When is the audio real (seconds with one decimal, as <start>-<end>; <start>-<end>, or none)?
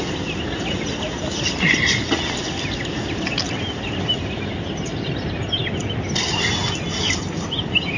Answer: 0.0-8.0